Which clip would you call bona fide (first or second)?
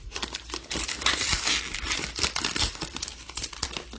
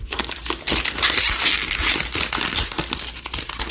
second